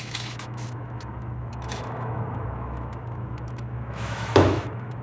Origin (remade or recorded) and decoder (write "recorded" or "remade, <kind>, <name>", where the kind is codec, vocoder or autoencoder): remade, autoencoder, DAC-VAE